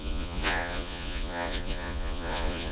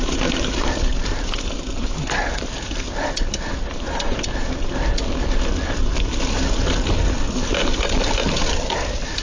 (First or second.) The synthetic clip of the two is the first